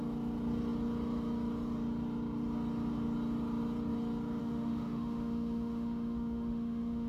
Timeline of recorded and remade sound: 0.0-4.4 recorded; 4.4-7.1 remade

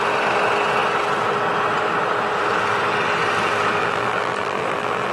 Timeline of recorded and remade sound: 0.0-3.8 recorded; 3.8-5.1 remade

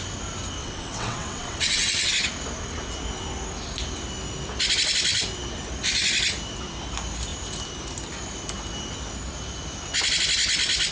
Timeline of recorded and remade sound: 0.0-0.6 recorded; 0.6-2.1 remade; 2.1-10.9 recorded